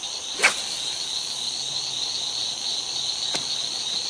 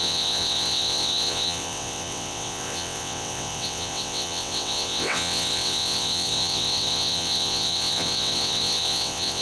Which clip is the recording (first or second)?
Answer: first